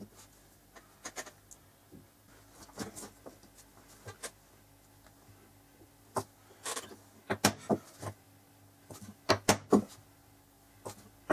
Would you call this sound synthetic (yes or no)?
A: no